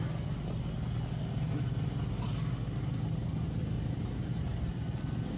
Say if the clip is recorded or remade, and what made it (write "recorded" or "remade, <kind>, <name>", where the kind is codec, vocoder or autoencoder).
recorded